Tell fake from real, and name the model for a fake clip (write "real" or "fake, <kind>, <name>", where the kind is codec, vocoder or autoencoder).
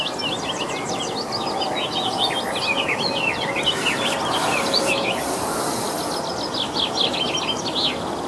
real